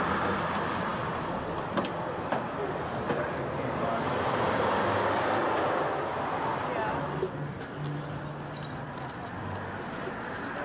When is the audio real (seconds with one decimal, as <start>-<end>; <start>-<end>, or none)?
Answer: 0.0-10.6